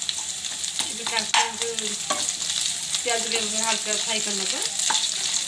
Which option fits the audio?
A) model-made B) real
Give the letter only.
B